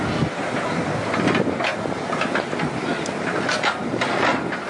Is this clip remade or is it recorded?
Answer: recorded